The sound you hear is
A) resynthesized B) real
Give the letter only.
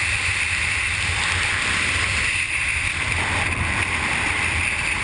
A